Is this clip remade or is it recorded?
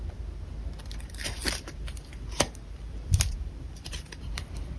remade